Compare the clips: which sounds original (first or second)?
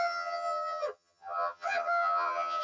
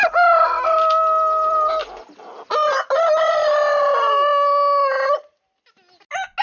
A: second